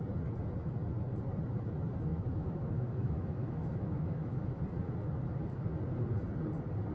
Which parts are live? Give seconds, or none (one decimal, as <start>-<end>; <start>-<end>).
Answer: 0.0-2.1; 4.6-6.9